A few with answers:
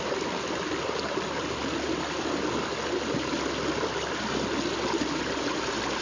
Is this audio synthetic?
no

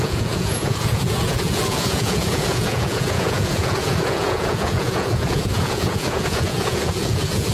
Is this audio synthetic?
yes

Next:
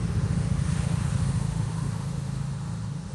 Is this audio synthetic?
yes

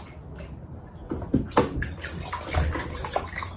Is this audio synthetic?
no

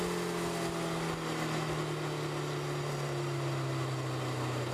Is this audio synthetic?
no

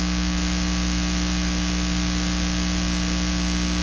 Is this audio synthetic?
no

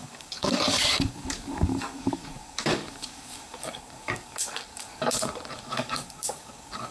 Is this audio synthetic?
yes